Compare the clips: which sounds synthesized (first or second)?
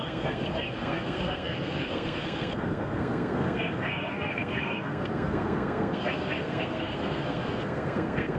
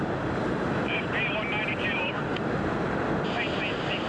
first